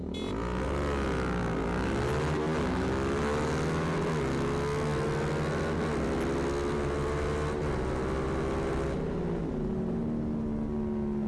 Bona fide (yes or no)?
yes